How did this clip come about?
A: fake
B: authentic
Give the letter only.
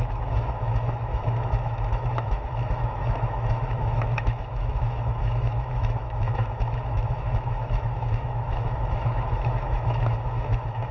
A